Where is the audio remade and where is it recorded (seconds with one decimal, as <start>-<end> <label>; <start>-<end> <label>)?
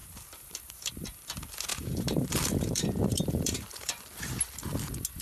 0.0-0.9 remade; 0.9-1.7 recorded; 1.7-4.0 remade; 4.0-5.2 recorded